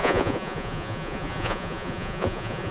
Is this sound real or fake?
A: fake